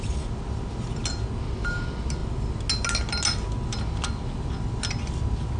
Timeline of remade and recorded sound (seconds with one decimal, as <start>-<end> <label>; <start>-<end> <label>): 0.0-5.6 recorded